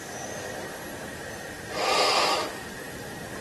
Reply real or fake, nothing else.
real